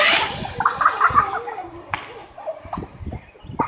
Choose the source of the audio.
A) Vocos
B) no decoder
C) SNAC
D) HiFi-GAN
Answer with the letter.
B